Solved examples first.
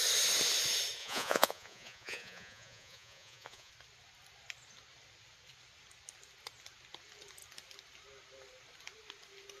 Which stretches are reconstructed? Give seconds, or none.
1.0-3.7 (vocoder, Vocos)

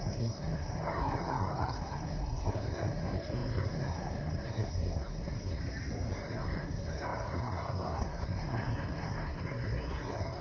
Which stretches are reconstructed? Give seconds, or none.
0.0-5.6 (codec, SNAC); 6.1-10.4

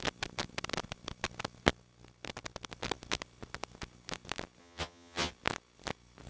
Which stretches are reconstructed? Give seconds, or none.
4.6-5.3 (vocoder, HiFi-GAN)